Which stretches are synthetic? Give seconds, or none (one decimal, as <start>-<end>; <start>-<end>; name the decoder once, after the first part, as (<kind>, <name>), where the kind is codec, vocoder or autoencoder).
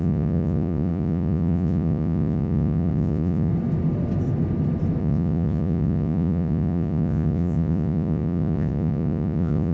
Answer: 0.0-3.5 (vocoder, Vocos); 5.0-9.7